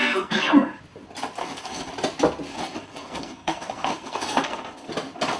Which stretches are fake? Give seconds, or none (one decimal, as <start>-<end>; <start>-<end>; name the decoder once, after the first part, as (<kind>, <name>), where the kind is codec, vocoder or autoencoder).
0.0-0.8 (codec, SNAC); 1.4-1.9; 2.5-4.9

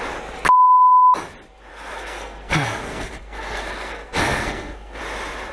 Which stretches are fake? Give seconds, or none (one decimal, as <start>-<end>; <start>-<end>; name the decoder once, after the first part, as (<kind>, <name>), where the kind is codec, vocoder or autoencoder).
1.7-5.0 (codec, SNAC)

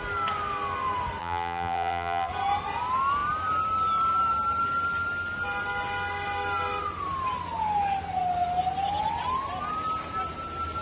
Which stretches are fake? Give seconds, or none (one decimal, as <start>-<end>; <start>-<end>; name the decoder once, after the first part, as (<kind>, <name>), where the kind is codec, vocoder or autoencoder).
1.2-2.3 (vocoder, BigVGAN v2)

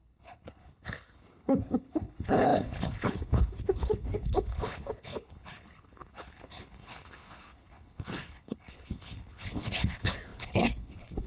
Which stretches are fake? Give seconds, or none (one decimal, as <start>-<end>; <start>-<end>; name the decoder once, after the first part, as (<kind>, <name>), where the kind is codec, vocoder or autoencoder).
0.0-11.3 (codec, HILCodec)

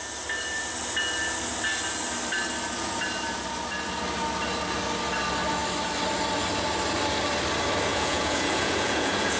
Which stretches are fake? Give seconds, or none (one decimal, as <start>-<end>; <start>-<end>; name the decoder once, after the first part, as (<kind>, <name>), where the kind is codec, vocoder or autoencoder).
7.9-9.4 (vocoder, Vocos)

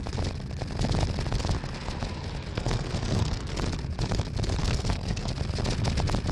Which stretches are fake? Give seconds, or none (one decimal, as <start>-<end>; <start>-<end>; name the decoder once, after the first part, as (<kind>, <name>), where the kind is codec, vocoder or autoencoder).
2.5-3.5 (codec, SNAC); 4.6-5.3

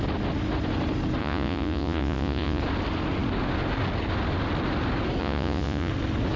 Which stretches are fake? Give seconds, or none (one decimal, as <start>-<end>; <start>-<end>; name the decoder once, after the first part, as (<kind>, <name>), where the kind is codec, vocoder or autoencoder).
1.2-2.6 (vocoder, Vocos); 5.2-5.9